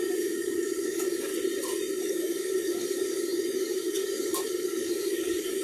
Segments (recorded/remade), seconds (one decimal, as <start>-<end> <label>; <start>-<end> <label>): 0.0-1.3 remade; 1.3-2.0 recorded; 2.0-5.6 remade